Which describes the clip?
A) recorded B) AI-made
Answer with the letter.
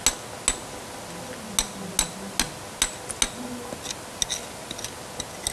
A